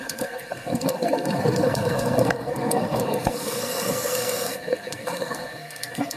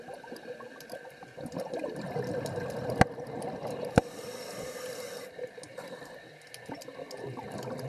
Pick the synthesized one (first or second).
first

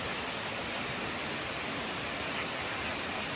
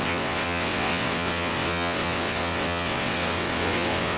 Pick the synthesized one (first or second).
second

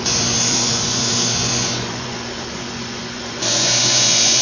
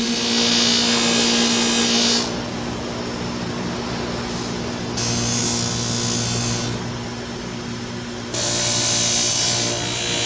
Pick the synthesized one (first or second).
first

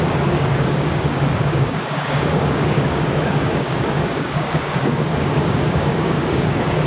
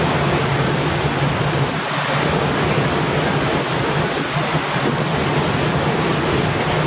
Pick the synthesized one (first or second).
first